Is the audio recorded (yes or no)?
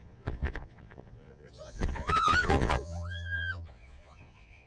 no